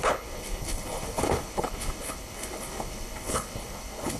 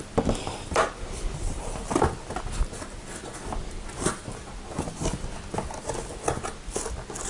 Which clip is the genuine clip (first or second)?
second